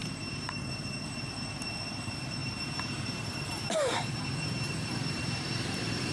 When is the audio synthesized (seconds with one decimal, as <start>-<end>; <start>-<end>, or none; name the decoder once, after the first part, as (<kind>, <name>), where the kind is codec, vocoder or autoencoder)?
0.0-0.7 (vocoder, BigVGAN v2); 2.4-6.1